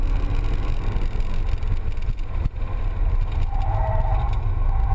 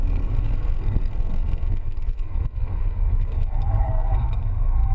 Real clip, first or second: first